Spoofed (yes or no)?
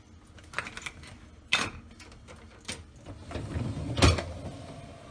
no